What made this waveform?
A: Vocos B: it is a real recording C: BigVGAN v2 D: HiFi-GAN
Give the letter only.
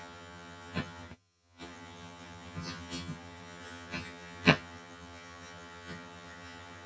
D